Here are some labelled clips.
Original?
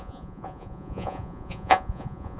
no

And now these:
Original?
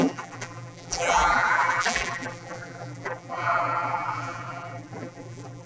no